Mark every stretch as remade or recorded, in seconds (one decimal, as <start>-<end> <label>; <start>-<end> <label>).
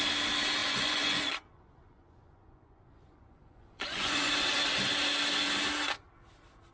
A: 0.0-0.6 recorded; 0.6-4.3 remade; 4.3-6.7 recorded